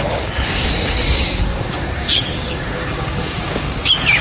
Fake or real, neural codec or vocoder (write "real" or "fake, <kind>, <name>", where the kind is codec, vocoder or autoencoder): fake, codec, DAC